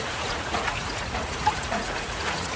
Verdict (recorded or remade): remade